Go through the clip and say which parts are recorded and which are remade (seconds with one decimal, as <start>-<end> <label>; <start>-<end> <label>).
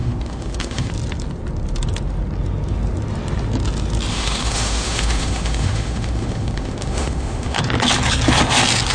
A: 0.0-0.9 remade; 0.9-4.1 recorded; 4.1-7.6 remade; 7.6-8.9 recorded